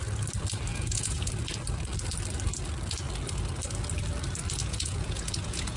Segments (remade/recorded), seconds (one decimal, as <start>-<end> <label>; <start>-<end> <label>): 0.0-0.7 recorded; 0.7-1.3 remade; 1.3-4.6 recorded; 4.6-5.8 remade